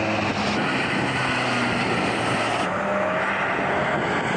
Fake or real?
real